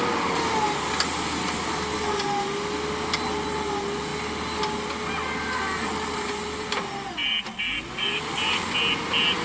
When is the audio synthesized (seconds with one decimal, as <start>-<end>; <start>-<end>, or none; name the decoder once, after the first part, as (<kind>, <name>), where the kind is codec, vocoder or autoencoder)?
7.2-8.6 (vocoder, BigVGAN v2)